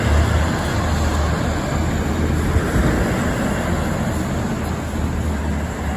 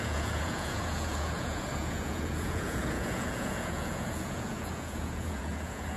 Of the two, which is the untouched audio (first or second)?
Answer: first